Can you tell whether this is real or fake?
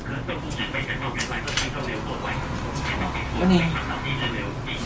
real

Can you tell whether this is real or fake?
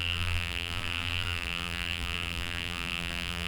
fake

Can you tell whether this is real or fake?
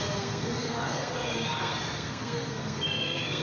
fake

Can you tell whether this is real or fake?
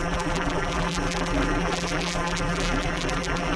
fake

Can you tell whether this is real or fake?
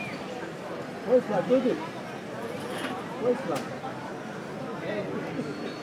real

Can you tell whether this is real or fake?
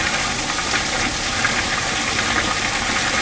real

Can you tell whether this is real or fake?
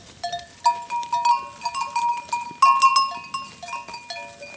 real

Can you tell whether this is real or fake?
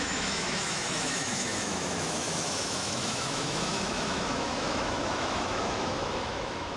fake